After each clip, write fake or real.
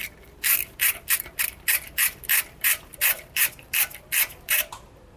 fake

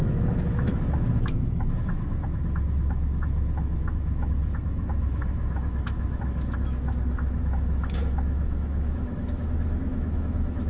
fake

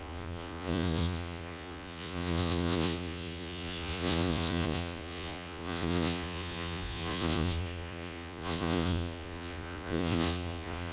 fake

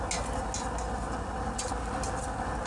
real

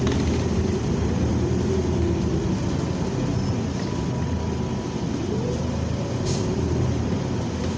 real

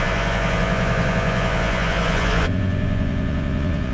fake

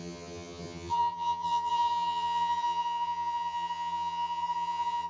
fake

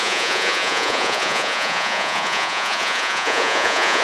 fake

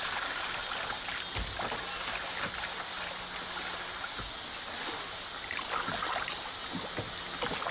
real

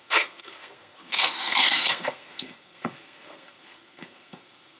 fake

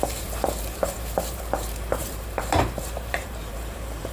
fake